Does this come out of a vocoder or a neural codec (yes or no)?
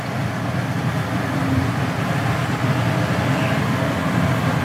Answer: no